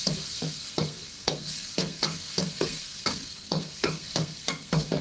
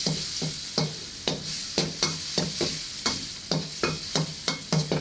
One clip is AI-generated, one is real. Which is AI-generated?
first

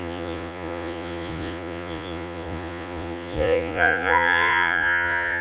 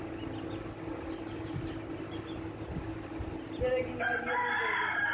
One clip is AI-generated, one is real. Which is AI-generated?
first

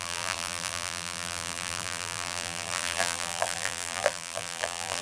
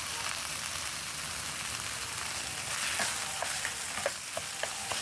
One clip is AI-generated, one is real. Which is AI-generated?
first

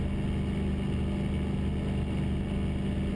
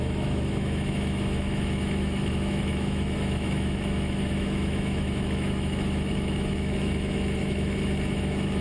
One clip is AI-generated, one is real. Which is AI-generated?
second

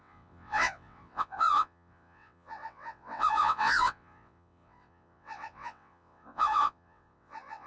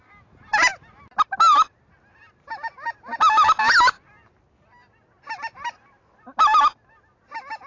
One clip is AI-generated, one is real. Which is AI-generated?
first